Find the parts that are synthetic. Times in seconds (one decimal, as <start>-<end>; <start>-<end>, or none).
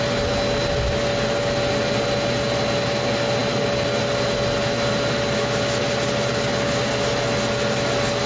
none